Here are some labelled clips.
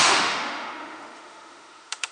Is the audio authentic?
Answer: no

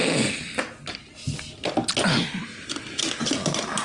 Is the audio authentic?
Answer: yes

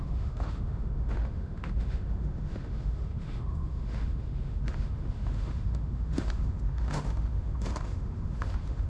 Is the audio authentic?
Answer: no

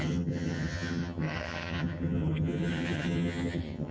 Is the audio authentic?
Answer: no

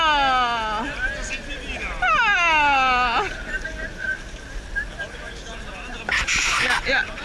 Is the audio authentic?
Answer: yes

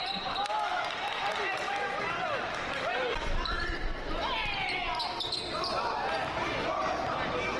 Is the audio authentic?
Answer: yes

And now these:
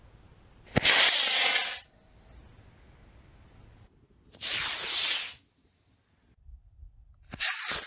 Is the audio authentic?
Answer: yes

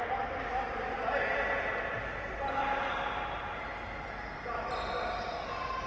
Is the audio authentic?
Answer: yes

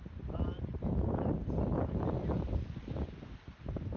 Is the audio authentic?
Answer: yes